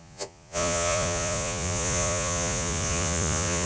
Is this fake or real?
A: fake